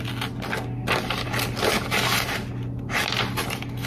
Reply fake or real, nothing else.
real